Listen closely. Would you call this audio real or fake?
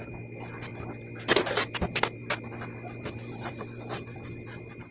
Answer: real